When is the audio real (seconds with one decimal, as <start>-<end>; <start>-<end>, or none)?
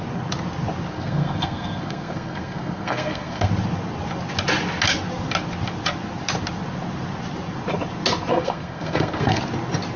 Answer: 0.0-0.9; 3.5-8.3; 9.4-10.0